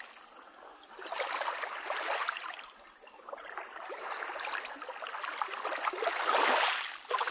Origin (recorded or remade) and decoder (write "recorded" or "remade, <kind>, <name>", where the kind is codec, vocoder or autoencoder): recorded